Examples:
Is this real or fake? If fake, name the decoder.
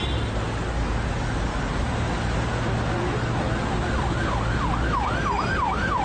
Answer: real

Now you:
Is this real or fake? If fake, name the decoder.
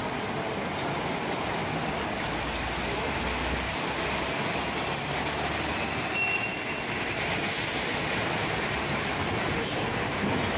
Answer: real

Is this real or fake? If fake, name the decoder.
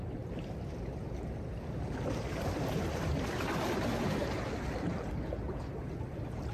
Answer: real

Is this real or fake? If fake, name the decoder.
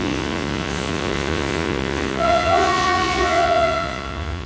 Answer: fake, vocoder, Vocos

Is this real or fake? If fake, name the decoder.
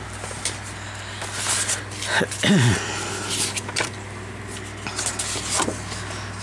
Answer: real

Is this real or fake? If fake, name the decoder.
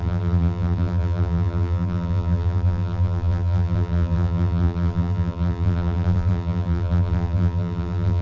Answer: fake, vocoder, BigVGAN v2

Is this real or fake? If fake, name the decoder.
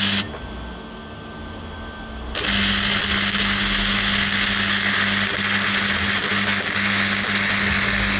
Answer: real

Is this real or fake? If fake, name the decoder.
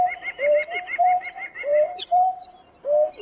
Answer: fake, vocoder, BigVGAN v2